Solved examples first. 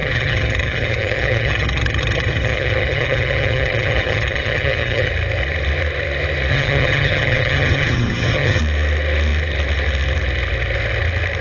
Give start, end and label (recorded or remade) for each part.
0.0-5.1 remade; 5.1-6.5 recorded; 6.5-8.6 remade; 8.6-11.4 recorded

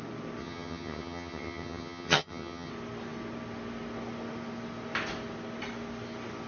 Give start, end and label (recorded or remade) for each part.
0.0-0.4 recorded; 0.4-2.7 remade; 2.7-6.5 recorded

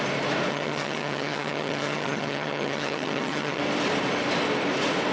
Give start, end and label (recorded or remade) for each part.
0.0-0.5 recorded; 0.5-3.6 remade; 3.6-5.1 recorded